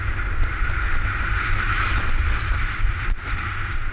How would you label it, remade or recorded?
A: recorded